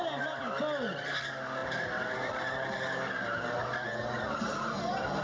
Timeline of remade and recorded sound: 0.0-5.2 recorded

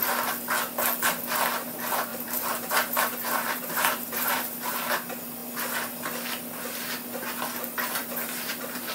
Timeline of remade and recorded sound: 0.0-2.1 recorded; 2.1-4.8 remade; 4.8-8.0 recorded; 8.0-8.9 remade

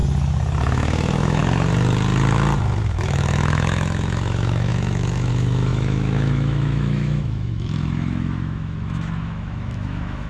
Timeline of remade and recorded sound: 0.0-0.6 recorded; 0.6-1.4 remade; 1.4-2.8 recorded; 2.8-10.3 remade